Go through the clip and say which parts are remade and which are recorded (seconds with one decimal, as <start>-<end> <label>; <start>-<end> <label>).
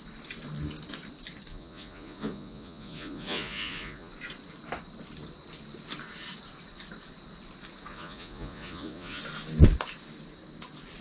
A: 0.0-1.5 recorded; 1.5-4.1 remade; 4.1-7.9 recorded; 7.9-9.2 remade; 9.2-11.0 recorded